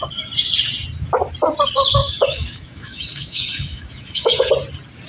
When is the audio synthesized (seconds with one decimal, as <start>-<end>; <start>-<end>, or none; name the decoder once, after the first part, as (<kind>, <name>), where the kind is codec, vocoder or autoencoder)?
2.0-4.5 (autoencoder, DAC-VAE)